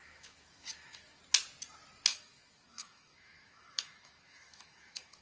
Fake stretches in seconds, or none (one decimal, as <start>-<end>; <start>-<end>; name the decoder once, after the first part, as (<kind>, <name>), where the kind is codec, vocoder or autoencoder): 0.0-1.2 (autoencoder, DAC-VAE); 2.1-5.2